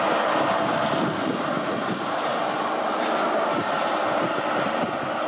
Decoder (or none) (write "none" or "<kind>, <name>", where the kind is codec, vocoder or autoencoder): none